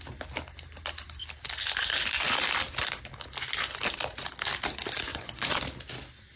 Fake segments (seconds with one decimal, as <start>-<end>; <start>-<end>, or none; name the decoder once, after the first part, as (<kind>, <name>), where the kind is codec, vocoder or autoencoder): 5.1-5.6 (vocoder, Vocos)